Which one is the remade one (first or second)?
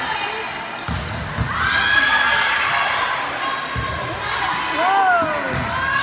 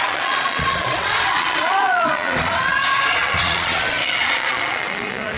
second